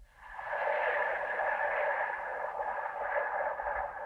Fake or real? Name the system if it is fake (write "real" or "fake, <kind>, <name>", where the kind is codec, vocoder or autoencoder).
real